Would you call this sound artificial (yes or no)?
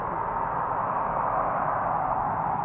no